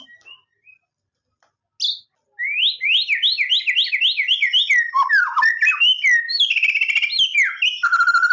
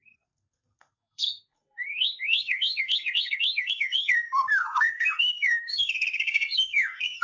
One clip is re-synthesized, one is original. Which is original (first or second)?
first